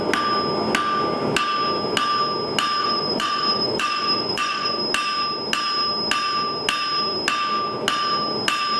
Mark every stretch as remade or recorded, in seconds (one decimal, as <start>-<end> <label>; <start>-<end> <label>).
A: 0.0-2.8 recorded; 2.8-4.8 remade; 4.8-8.8 recorded